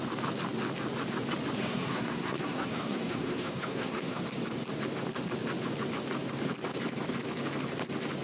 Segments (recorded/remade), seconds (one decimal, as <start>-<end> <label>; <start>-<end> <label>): 0.0-1.6 recorded; 1.6-4.2 remade; 4.2-8.2 recorded